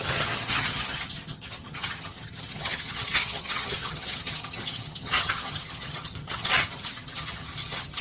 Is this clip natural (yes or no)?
no